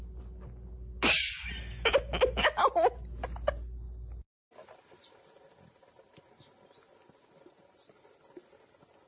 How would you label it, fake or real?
real